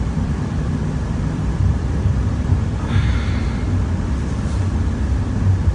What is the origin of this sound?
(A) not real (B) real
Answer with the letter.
B